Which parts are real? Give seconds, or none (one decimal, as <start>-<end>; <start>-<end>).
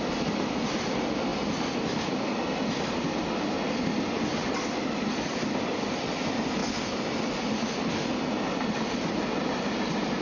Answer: 0.0-10.2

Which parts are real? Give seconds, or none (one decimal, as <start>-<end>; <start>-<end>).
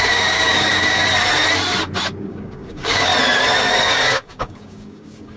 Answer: 1.0-2.2; 3.1-3.8